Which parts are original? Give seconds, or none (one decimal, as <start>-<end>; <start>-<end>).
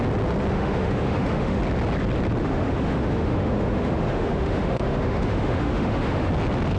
0.0-0.5; 1.6-2.4; 6.3-6.8